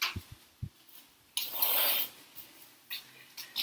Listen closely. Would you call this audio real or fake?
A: real